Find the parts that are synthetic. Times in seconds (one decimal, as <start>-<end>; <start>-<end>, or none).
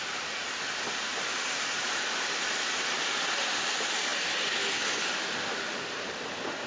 none